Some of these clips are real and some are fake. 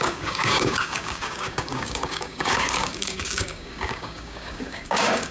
fake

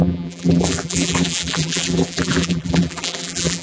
fake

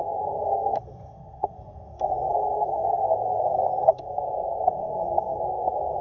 fake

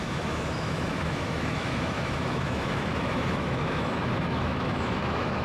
fake